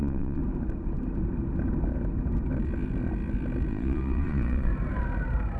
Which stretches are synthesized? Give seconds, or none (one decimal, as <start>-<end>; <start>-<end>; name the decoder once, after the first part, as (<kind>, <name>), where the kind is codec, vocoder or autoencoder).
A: 0.0-0.4 (vocoder, Vocos); 3.7-4.7